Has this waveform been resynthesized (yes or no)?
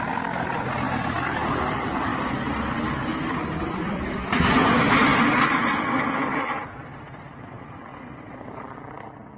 no